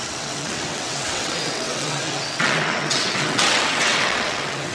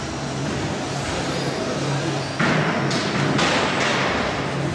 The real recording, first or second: second